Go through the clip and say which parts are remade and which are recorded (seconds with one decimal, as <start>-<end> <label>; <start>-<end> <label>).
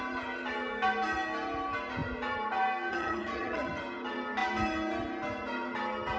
0.0-2.9 recorded; 2.9-3.7 remade; 3.7-6.2 recorded